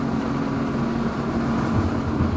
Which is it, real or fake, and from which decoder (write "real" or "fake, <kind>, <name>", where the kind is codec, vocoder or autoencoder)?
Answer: real